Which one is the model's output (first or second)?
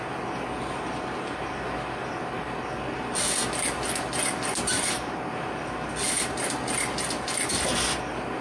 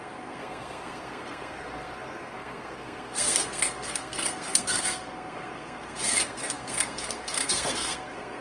second